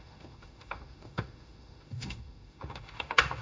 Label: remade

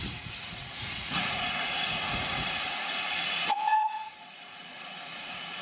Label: remade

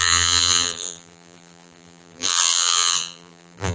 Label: remade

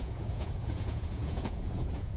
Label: remade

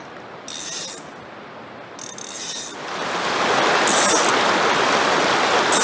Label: recorded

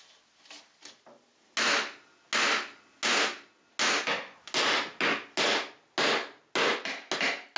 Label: recorded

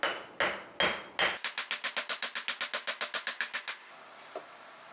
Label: recorded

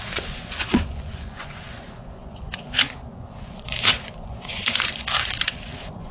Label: remade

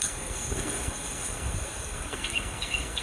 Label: remade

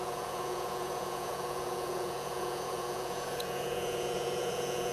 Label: remade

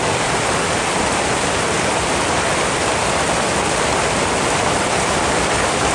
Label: remade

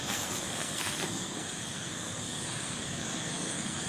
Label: remade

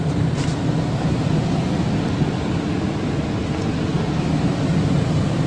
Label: recorded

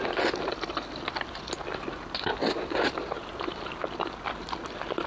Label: recorded